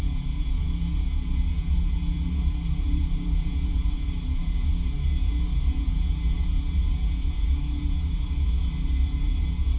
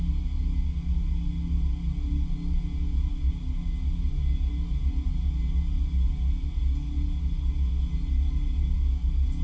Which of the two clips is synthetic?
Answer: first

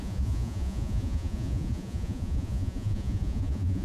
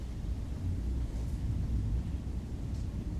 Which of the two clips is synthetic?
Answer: first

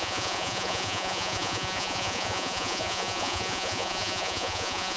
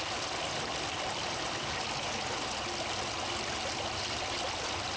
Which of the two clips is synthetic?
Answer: first